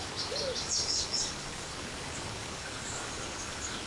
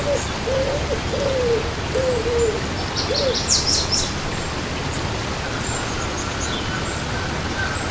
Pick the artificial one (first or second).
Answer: first